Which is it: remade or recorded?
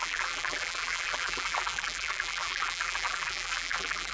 remade